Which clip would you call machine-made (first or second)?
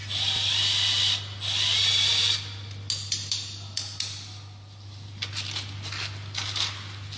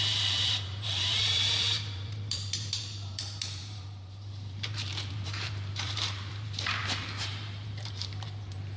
second